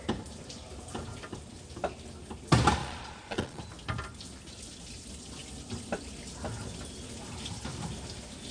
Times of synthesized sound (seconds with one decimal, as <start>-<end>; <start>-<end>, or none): 2.8-3.6